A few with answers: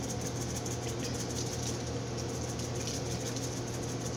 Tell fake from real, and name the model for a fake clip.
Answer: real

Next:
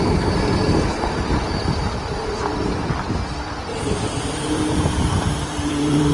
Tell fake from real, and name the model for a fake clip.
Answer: fake, vocoder, BigVGAN v2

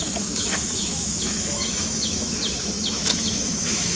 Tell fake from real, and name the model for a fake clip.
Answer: fake, autoencoder, DAC-VAE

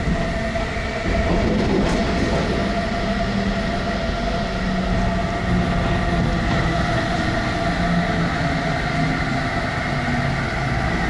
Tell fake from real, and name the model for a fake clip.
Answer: real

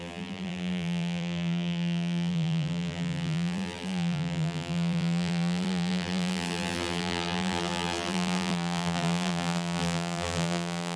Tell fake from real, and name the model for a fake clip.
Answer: fake, vocoder, BigVGAN v2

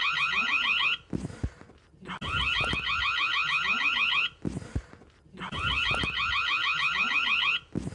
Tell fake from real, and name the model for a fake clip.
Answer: real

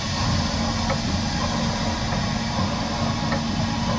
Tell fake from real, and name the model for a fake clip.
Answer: real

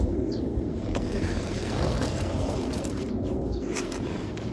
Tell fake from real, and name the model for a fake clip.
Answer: fake, codec, SNAC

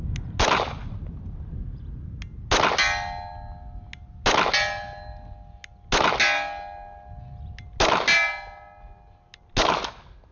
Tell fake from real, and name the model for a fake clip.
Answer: real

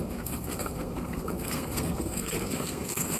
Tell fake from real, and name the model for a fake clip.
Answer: fake, codec, SNAC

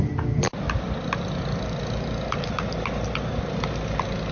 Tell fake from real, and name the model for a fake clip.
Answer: real